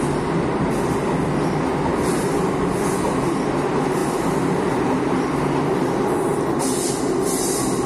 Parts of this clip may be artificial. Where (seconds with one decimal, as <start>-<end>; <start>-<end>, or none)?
none